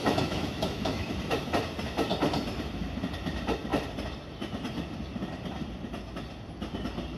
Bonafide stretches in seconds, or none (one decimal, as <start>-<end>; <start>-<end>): 1.1-7.2